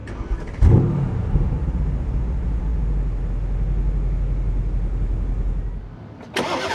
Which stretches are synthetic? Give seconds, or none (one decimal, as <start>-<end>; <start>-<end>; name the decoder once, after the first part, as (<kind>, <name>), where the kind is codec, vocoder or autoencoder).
0.8-2.7 (vocoder, BigVGAN v2)